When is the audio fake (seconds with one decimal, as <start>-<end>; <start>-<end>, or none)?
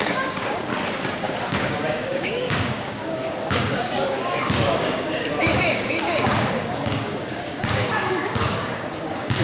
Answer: 0.0-0.7; 1.5-9.4